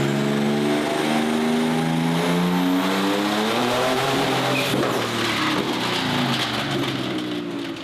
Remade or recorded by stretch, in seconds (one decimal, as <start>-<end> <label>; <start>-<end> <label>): 0.0-3.6 recorded; 3.6-4.7 remade; 4.7-7.8 recorded